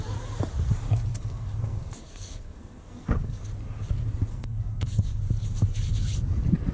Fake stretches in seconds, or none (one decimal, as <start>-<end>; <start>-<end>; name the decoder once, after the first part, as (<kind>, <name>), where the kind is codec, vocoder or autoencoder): 1.1-3.4 (codec, SNAC); 4.3-5.2